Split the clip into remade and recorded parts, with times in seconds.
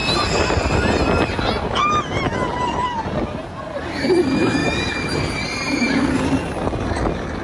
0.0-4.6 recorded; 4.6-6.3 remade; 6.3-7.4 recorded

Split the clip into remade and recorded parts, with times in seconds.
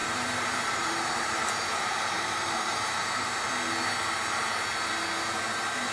0.0-3.5 remade; 3.5-5.9 recorded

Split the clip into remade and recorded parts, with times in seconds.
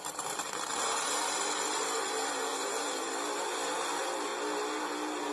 0.0-4.3 remade; 4.3-5.3 recorded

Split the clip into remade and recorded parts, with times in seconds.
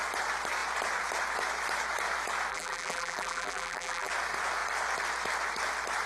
0.0-2.5 recorded; 2.5-4.1 remade; 4.1-6.1 recorded